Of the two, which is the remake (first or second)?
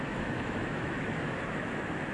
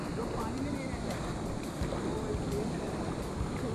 first